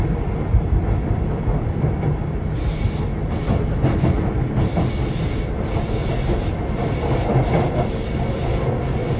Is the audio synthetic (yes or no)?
no